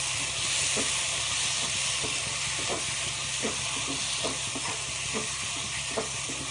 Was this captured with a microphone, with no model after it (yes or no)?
yes